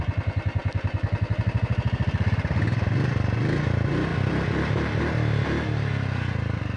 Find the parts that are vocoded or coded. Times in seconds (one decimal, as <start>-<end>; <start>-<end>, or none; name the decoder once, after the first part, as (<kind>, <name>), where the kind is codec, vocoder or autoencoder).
none